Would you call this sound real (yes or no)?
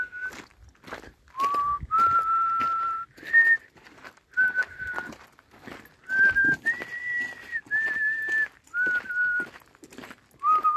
yes